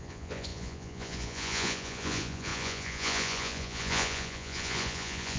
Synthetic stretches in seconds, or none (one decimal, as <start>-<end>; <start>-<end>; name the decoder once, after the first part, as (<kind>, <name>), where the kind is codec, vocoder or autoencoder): 0.0-5.4 (vocoder, Vocos)